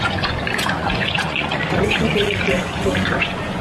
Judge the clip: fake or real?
fake